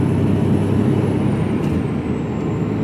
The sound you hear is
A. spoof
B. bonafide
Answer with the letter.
B